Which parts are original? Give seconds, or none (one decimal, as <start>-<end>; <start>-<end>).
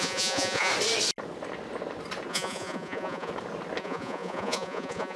0.7-2.3; 3.3-3.8